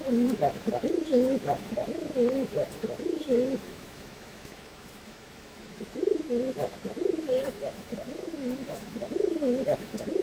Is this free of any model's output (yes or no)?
no